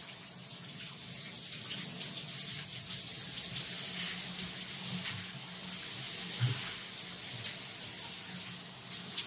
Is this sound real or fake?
real